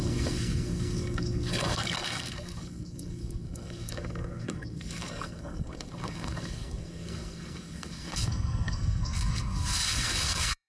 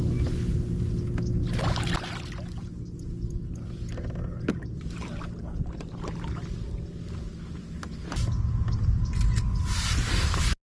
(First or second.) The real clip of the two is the second